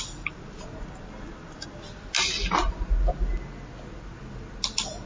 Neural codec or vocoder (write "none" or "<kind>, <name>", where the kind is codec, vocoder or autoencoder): none